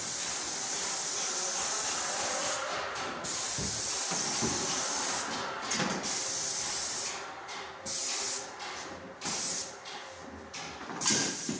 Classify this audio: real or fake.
real